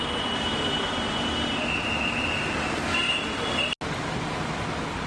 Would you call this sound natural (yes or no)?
yes